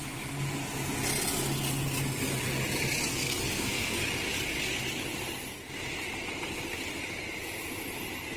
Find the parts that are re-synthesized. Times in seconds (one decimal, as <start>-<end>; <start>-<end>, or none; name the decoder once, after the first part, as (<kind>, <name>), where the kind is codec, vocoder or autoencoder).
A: 3.1-4.0 (codec, SNAC)